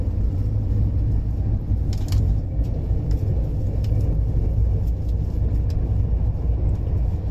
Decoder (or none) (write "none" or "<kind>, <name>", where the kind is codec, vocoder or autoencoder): none